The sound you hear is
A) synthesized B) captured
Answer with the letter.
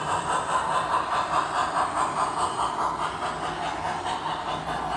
B